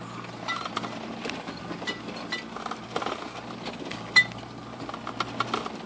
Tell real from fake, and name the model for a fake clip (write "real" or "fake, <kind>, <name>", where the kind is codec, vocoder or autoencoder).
real